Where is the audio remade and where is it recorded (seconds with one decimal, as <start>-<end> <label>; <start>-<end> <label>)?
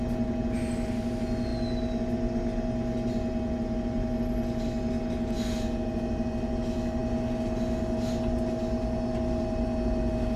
0.0-10.4 recorded